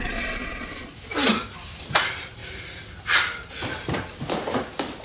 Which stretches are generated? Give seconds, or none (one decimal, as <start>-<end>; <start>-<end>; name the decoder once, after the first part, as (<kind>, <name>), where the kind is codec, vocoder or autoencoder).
none